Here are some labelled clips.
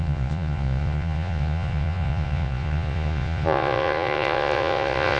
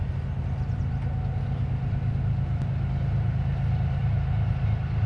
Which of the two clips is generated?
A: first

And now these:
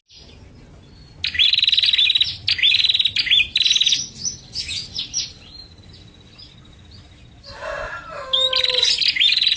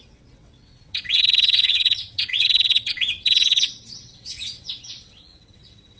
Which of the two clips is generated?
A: second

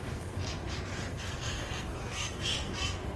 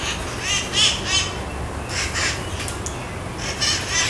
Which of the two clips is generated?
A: first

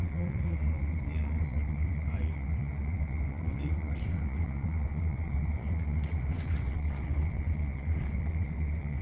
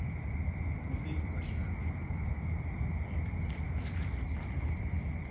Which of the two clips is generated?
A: first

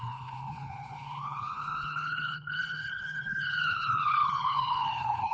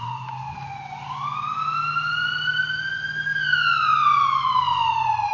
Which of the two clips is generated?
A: first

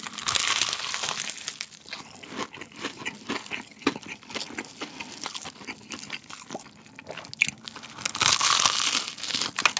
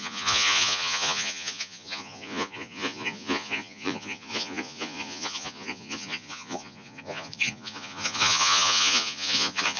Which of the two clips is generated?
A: second